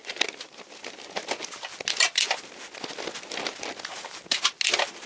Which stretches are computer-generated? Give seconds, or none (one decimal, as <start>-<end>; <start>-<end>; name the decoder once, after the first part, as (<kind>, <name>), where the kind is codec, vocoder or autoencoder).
none